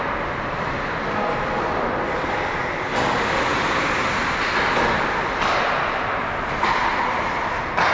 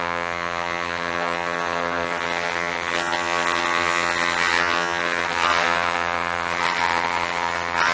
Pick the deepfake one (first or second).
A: second